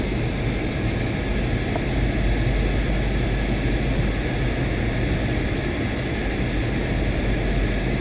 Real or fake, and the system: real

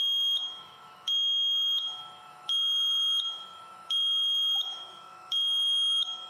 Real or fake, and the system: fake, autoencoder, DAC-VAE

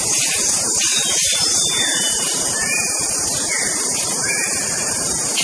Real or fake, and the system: real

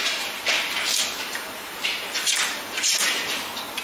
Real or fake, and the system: fake, vocoder, BigVGAN v2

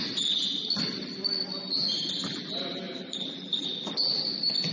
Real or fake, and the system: real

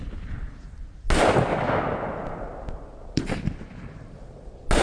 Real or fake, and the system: real